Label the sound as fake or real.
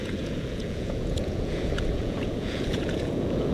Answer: fake